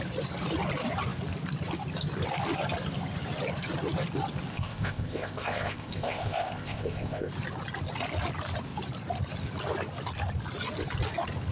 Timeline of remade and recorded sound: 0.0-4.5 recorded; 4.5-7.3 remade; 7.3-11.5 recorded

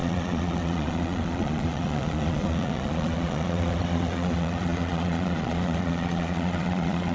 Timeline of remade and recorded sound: 0.0-7.1 remade